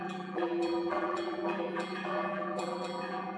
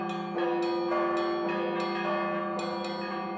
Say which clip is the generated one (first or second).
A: first